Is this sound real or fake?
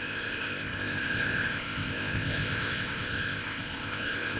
fake